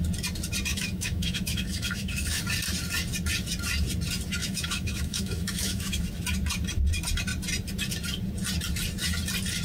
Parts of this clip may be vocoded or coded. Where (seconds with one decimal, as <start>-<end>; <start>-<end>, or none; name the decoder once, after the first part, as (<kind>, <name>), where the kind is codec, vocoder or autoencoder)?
0.7-2.4 (autoencoder, DAC-VAE); 4.4-6.0